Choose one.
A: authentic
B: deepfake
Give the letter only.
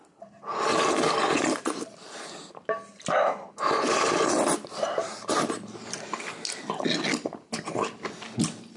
A